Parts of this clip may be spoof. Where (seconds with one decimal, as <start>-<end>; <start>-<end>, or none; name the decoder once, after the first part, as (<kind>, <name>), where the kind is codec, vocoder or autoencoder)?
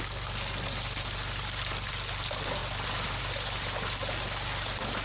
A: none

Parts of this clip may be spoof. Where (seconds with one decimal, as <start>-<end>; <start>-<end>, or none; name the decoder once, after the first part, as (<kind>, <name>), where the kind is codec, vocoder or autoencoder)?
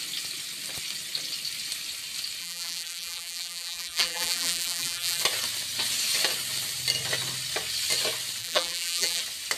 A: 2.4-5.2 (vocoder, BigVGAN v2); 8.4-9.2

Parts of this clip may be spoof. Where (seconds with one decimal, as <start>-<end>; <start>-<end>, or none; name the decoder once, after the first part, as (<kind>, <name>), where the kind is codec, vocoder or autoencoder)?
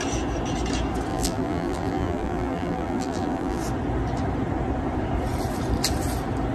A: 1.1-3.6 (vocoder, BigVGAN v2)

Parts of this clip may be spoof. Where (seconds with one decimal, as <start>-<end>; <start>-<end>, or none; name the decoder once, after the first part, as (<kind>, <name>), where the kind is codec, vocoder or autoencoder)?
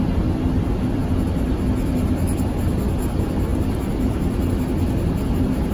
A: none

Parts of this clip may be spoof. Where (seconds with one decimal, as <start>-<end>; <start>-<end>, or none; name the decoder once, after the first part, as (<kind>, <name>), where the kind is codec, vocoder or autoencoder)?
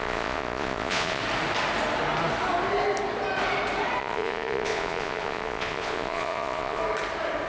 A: 0.0-1.2 (vocoder, Vocos); 4.0-6.8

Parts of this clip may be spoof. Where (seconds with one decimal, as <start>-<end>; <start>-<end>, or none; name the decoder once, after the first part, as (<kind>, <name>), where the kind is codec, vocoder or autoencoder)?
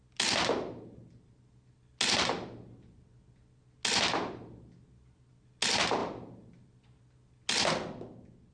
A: none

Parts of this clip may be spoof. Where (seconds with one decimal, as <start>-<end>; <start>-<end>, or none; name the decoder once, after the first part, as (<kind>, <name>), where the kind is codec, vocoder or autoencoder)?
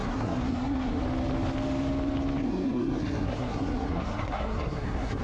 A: 0.0-1.0 (codec, SNAC); 2.4-5.2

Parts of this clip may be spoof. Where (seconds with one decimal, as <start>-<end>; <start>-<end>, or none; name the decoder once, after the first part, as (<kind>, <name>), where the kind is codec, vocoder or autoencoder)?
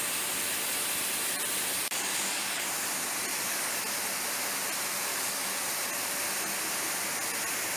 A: 1.7-2.6 (codec, DAC); 3.3-3.8; 5.1-5.7